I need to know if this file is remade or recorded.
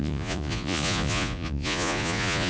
remade